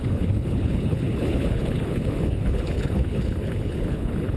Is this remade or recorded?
remade